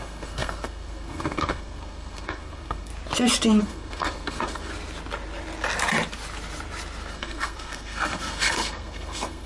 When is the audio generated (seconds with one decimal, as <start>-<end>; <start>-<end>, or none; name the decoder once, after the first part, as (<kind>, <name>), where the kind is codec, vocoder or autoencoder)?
0.0-2.9 (codec, SNAC); 3.6-4.7; 7.1-9.5